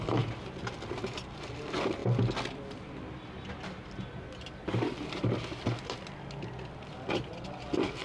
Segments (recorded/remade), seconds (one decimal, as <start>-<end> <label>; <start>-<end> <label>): 0.0-8.0 recorded